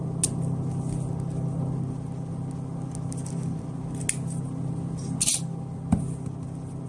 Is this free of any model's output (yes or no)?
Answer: yes